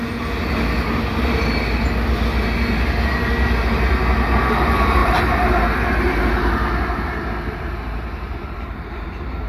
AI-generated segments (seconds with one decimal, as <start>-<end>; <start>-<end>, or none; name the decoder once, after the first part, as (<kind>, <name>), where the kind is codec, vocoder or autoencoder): 5.0-9.5 (vocoder, BigVGAN v2)